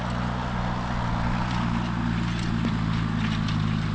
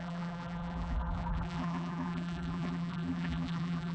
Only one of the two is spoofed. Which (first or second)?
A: second